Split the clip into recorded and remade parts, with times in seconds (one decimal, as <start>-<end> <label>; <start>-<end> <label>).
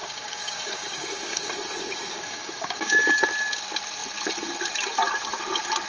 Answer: 0.0-1.5 remade; 1.5-2.1 recorded; 2.1-3.2 remade; 3.2-5.9 recorded